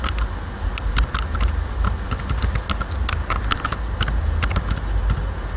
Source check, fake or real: real